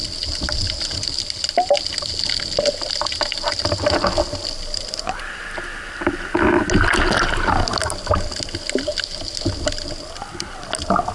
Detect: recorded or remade recorded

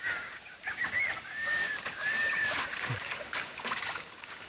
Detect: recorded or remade remade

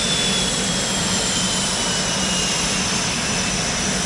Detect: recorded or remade recorded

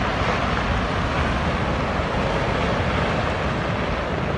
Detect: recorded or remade recorded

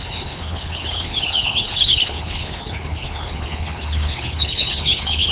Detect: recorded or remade remade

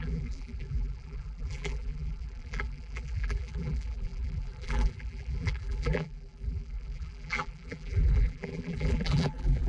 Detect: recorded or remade remade